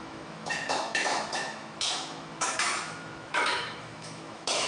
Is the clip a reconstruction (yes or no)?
yes